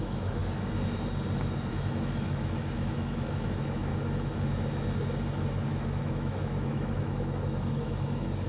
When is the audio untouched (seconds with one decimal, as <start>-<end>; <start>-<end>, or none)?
0.4-1.7; 3.9-5.6